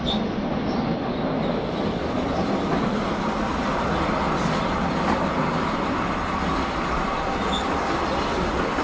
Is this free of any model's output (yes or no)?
yes